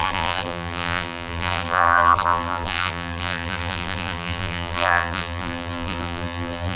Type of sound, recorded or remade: remade